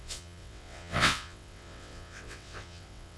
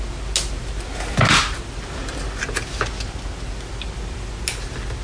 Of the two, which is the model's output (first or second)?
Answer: first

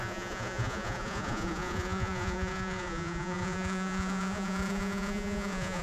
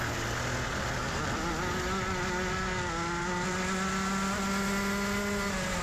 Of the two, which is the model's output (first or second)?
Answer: first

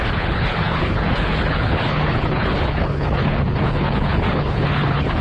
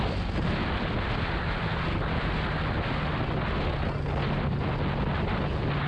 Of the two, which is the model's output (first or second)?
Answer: first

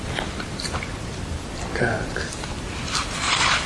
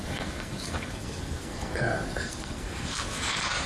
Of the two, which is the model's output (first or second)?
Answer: second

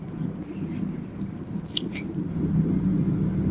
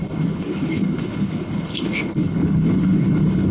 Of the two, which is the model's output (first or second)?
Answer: second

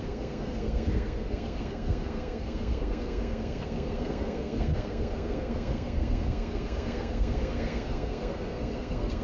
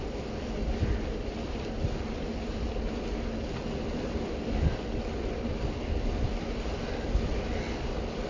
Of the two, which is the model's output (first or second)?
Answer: first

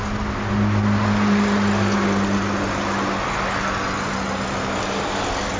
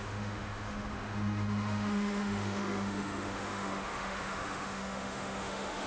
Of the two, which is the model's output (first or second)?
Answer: second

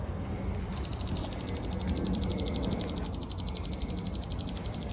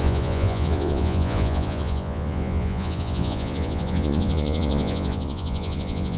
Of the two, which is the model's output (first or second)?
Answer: second